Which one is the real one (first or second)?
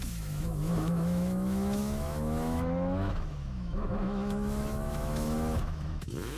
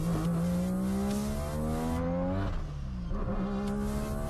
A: second